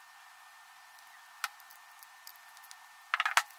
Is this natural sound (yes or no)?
yes